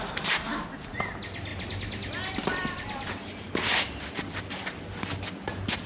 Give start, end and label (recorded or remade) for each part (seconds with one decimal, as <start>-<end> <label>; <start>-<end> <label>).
0.0-1.5 recorded; 1.5-4.4 remade; 4.4-5.9 recorded